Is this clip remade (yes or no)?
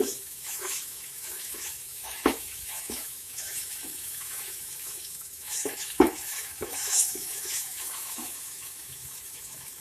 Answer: yes